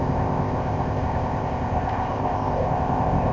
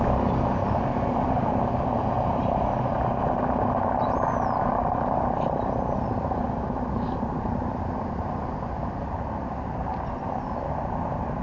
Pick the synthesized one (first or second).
first